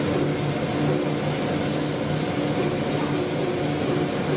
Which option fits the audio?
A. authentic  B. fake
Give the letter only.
A